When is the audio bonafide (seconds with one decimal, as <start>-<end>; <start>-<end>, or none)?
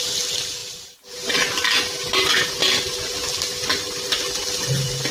0.0-5.1